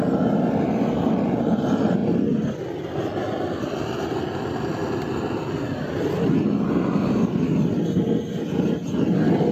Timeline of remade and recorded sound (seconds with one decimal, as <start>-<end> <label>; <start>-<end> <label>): 0.0-9.5 recorded